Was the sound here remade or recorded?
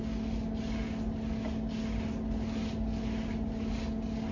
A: recorded